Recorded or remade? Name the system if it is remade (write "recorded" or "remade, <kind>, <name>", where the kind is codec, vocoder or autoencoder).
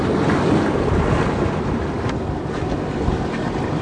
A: recorded